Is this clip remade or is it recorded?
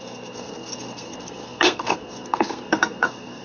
remade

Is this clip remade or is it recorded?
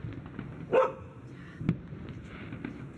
recorded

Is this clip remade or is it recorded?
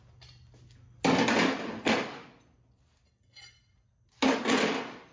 recorded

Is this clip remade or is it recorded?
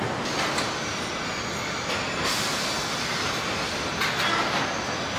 recorded